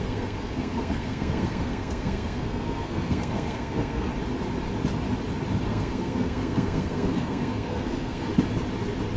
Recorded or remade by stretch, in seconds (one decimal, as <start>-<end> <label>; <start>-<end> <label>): 0.0-4.1 remade; 4.1-5.7 recorded; 5.7-8.3 remade; 8.3-9.2 recorded